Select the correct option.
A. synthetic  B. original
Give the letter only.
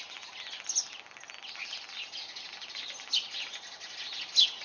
B